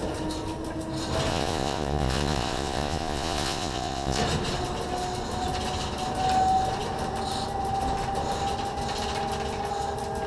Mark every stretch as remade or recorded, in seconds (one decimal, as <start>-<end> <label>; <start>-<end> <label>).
0.0-1.3 recorded; 1.3-4.2 remade; 4.2-10.3 recorded